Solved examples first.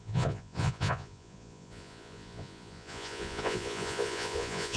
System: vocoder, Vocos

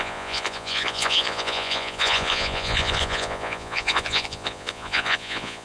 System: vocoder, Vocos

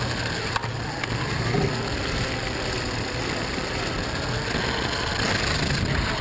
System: none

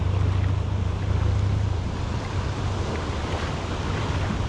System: none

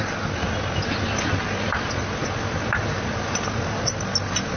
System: none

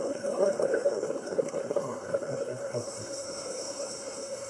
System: codec, SNAC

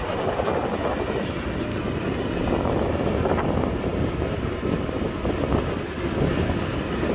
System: none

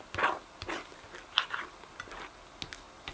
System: none